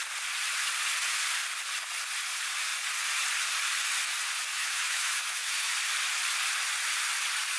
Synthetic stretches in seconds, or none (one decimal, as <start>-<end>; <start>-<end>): 4.5-5.7